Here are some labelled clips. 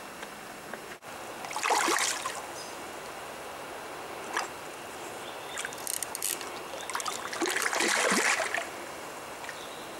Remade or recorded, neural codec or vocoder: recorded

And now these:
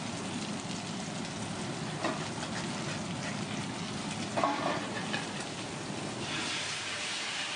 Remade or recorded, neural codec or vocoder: recorded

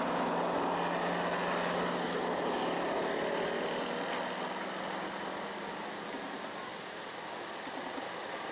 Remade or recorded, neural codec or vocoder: recorded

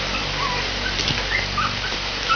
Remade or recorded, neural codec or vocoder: recorded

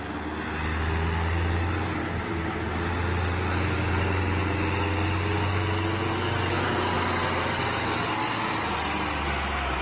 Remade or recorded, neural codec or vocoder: recorded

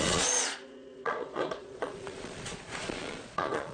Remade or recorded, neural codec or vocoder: remade, vocoder, Vocos